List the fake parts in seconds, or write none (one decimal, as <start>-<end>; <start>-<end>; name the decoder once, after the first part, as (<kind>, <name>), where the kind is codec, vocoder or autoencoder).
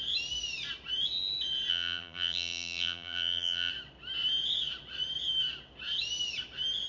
1.7-3.7 (vocoder, BigVGAN v2)